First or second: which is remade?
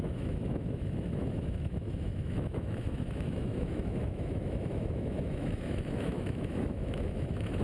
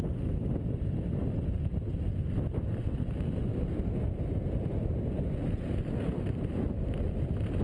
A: first